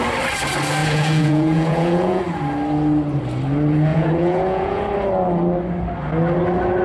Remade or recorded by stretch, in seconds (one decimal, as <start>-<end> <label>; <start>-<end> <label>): 0.0-0.8 recorded; 0.8-2.2 remade; 2.2-3.9 recorded; 3.9-4.8 remade; 4.8-6.8 recorded